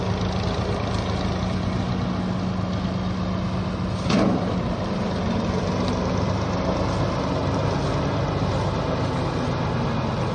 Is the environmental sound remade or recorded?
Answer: recorded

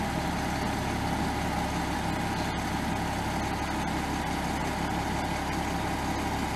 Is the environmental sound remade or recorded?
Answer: recorded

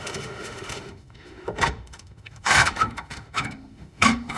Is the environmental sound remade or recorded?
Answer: remade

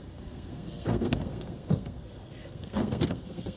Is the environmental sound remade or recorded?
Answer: remade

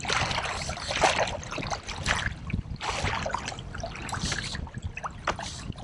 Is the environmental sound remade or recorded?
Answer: recorded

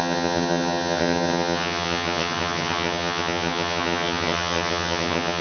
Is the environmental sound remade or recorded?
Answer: remade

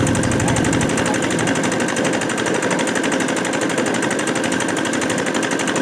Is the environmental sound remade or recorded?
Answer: recorded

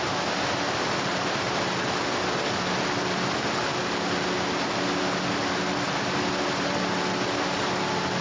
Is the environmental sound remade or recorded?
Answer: recorded